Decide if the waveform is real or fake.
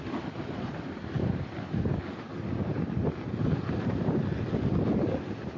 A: real